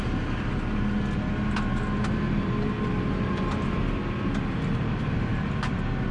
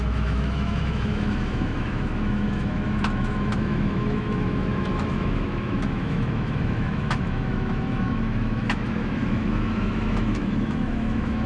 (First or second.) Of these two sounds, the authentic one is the first